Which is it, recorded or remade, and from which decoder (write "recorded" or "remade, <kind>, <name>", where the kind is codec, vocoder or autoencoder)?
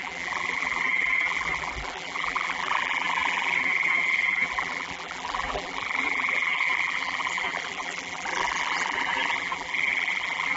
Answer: remade, vocoder, BigVGAN v2